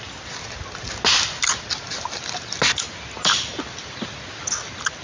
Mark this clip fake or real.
real